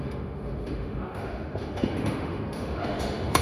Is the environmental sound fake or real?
fake